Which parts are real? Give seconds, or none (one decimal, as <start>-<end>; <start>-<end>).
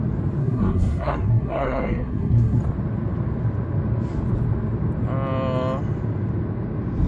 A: 0.0-0.4; 2.6-7.1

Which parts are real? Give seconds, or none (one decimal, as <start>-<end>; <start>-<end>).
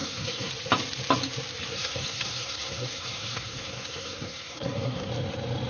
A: 0.5-1.7; 5.1-5.7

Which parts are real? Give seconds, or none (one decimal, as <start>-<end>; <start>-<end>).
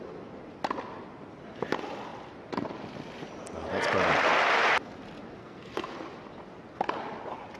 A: 0.0-5.4; 5.9-7.6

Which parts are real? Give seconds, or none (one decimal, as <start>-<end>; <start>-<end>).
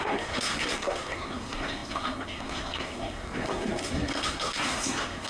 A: none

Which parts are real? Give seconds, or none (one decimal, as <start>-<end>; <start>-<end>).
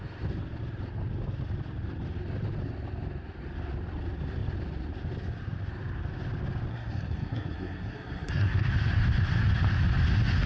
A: 0.0-6.7; 8.7-10.5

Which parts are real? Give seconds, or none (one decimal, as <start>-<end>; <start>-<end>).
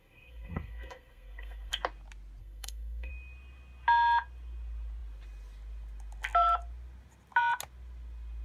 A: 1.7-2.4; 3.1-8.4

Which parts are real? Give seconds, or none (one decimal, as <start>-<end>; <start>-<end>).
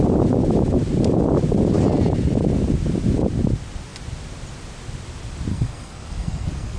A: 0.0-5.5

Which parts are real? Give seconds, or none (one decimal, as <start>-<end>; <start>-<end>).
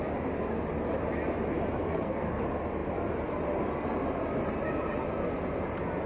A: 0.0-1.8; 2.4-6.1